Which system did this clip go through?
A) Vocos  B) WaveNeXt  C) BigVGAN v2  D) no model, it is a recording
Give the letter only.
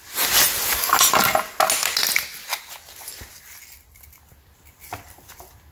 D